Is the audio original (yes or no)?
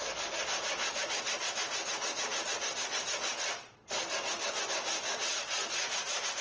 yes